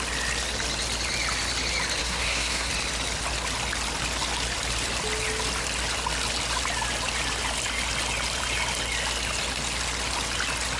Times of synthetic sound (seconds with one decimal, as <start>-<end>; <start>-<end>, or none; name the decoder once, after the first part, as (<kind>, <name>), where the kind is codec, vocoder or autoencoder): 2.0-2.7 (codec, SNAC)